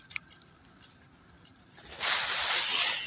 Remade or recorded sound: recorded